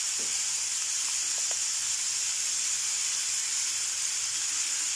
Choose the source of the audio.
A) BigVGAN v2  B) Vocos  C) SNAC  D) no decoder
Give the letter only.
D